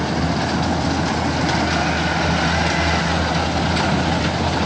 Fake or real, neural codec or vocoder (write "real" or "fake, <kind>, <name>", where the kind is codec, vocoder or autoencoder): real